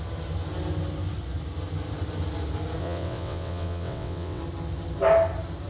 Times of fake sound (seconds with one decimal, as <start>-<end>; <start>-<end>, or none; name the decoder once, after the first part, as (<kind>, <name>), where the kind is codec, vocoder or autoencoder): 2.8-4.4 (vocoder, WaveNeXt)